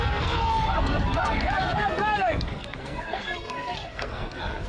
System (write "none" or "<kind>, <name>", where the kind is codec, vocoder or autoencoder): codec, SNAC